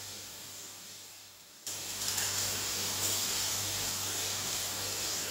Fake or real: fake